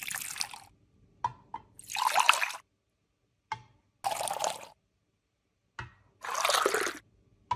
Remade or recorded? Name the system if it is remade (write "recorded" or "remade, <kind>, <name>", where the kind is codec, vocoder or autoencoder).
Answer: recorded